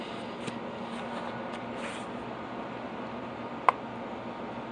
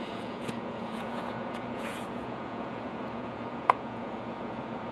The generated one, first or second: second